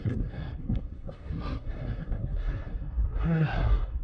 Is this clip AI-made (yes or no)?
yes